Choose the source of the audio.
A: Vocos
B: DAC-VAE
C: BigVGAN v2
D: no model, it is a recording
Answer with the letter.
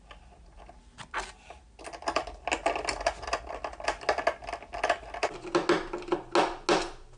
D